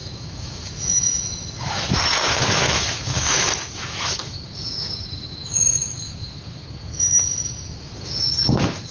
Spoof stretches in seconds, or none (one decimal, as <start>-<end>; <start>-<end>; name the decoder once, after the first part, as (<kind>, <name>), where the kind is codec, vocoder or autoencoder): 0.0-8.9 (autoencoder, DAC-VAE)

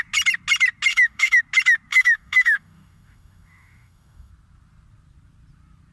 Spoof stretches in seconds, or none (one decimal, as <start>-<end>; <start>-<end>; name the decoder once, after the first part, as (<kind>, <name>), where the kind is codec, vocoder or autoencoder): 0.9-1.4 (autoencoder, DAC-VAE); 1.9-4.3